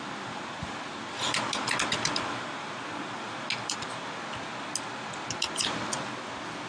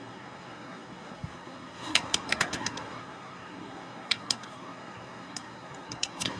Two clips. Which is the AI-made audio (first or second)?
second